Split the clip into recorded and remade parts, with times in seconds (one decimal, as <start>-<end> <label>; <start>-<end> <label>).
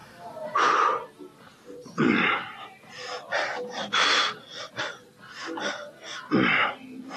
0.0-0.6 remade; 0.6-1.3 recorded; 1.3-3.3 remade; 3.3-3.8 recorded; 3.8-4.8 remade; 4.8-6.6 recorded; 6.6-7.2 remade